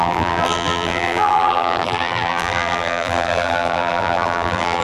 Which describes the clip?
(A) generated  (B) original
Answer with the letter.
A